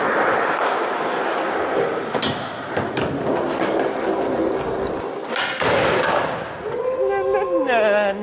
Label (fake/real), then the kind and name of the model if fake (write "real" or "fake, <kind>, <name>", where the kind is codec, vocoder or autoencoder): real